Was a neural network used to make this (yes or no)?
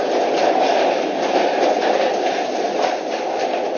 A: no